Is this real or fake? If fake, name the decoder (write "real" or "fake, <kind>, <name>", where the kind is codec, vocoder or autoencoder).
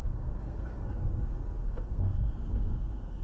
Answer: fake, codec, SNAC